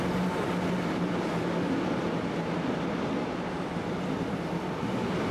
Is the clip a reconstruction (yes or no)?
no